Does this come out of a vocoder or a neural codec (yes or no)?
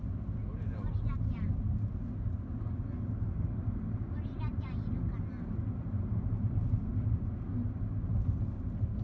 no